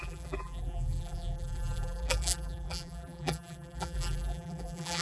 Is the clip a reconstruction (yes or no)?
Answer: yes